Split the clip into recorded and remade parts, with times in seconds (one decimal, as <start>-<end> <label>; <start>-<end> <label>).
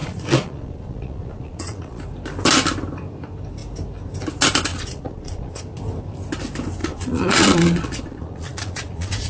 0.0-2.0 remade; 2.0-4.7 recorded; 4.7-5.6 remade; 5.6-6.8 recorded; 6.8-9.3 remade